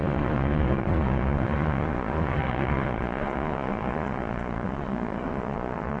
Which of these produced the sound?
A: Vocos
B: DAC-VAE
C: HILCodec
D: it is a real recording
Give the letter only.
A